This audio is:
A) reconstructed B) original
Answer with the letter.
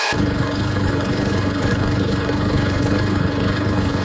A